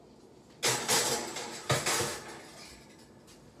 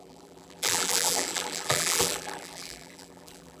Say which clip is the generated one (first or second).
second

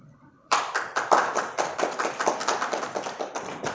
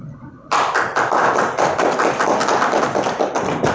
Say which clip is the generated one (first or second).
first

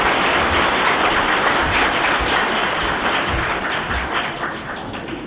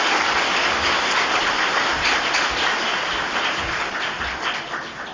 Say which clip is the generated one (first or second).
first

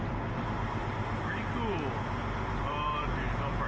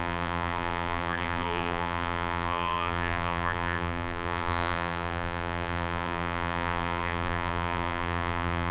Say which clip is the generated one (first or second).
second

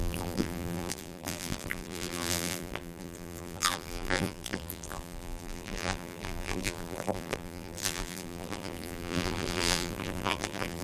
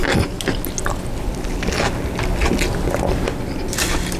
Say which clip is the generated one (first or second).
first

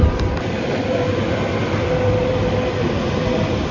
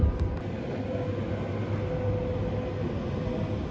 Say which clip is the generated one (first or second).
first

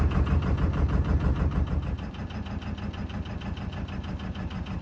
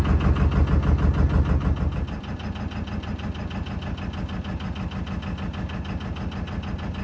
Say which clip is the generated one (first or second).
first